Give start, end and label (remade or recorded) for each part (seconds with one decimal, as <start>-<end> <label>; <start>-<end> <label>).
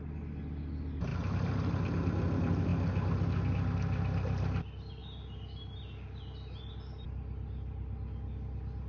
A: 0.0-8.9 recorded